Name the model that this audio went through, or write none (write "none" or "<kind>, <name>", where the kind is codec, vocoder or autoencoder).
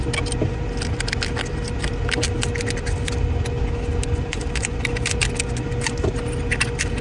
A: none